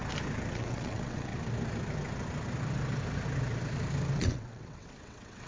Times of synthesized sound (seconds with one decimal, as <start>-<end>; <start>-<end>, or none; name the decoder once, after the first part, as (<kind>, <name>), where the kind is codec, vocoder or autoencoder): 0.5-1.3 (vocoder, WaveNeXt); 4.1-5.5